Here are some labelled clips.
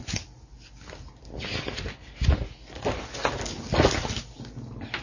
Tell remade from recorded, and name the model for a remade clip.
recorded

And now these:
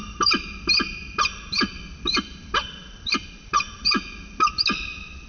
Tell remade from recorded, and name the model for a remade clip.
recorded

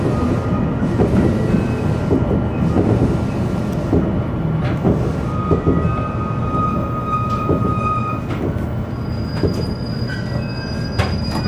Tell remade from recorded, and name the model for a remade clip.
recorded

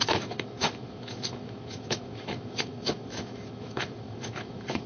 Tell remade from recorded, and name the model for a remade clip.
remade, autoencoder, DAC-VAE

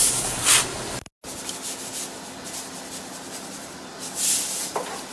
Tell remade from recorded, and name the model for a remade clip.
recorded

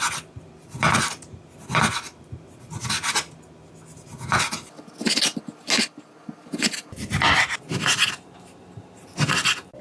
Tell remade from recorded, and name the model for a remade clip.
recorded